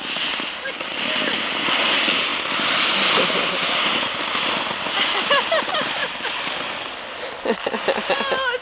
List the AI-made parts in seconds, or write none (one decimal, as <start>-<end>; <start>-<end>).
none